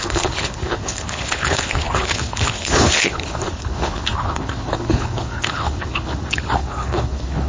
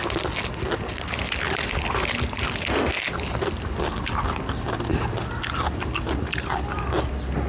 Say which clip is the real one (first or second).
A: second